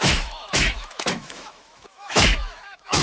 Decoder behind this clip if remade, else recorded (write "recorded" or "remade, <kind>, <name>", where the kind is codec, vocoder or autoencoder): remade, autoencoder, DAC-VAE